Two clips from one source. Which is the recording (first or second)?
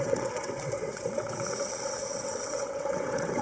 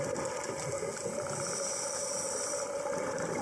second